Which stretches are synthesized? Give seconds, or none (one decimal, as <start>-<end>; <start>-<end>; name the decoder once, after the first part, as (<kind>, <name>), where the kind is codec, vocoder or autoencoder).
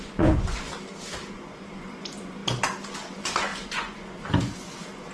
0.0-0.7 (vocoder, Vocos); 1.3-2.4; 3.0-5.1